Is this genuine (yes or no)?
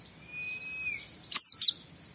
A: yes